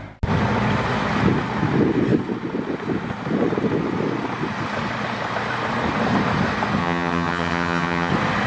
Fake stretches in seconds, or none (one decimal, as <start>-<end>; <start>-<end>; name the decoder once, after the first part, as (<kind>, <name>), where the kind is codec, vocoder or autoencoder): 6.8-8.1 (vocoder, HiFi-GAN)